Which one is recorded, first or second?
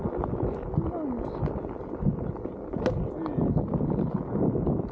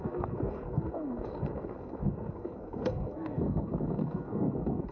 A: first